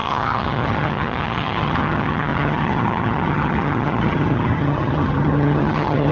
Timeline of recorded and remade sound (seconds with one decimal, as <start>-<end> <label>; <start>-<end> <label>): 0.0-6.1 remade